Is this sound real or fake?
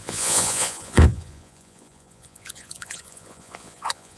fake